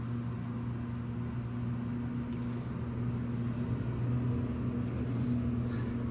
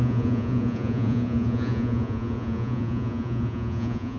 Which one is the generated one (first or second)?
second